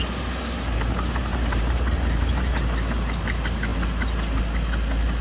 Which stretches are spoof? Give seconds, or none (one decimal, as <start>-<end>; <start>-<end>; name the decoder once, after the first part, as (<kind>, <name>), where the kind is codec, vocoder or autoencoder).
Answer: 1.3-2.5 (vocoder, BigVGAN v2)